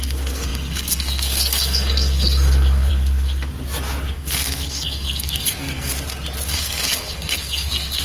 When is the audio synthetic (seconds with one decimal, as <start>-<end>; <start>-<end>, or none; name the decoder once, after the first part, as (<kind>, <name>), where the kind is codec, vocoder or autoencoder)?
0.0-3.5 (codec, SNAC); 4.1-5.9; 6.5-8.0

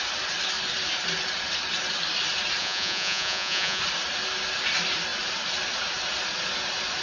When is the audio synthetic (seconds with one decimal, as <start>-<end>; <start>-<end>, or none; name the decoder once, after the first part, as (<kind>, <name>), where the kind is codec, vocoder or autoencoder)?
2.6-3.8 (vocoder, Vocos)

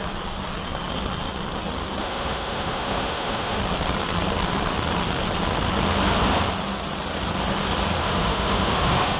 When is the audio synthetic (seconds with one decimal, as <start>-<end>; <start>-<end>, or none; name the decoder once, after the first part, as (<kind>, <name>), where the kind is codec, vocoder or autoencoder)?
2.0-3.6 (autoencoder, DAC-VAE); 8.0-9.2

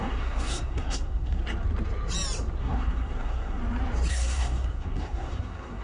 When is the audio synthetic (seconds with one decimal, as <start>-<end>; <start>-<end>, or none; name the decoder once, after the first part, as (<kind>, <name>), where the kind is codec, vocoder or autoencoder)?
0.0-1.4 (codec, SNAC); 2.6-3.6; 4.1-5.8

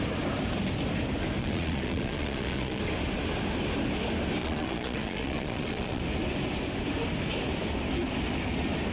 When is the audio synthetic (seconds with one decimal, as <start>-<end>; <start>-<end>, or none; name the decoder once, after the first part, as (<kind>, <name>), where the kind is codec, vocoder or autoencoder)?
1.4-2.8 (vocoder, Vocos); 4.4-6.0